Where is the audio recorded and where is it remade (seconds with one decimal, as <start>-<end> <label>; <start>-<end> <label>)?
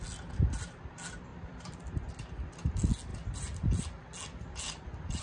0.0-1.3 recorded; 1.3-2.1 remade; 2.1-3.1 recorded; 3.1-3.8 remade; 3.8-5.2 recorded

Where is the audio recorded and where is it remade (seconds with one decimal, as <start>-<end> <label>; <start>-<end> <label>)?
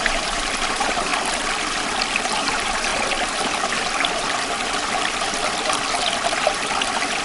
0.0-1.1 remade; 1.1-2.4 recorded; 2.4-2.9 remade; 2.9-7.2 recorded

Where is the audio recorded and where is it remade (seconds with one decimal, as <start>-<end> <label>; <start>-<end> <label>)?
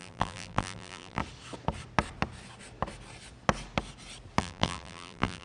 0.0-1.2 remade; 1.2-4.4 recorded; 4.4-5.4 remade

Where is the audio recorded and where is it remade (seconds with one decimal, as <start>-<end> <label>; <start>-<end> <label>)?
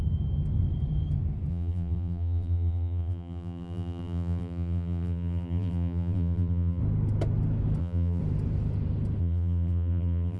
0.0-1.5 recorded; 1.5-6.8 remade; 6.8-7.8 recorded; 7.8-8.2 remade; 8.2-9.2 recorded; 9.2-10.4 remade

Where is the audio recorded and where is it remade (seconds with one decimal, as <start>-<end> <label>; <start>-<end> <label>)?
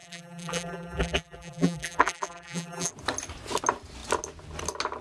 0.0-2.9 remade; 2.9-5.0 recorded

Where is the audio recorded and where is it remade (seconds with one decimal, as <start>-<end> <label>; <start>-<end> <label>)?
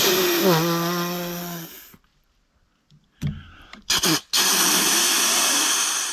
0.0-6.1 recorded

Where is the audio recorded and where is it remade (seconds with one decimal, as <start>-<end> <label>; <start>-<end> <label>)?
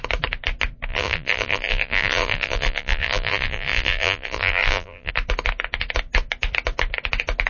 0.0-0.9 recorded; 0.9-5.1 remade; 5.1-7.5 recorded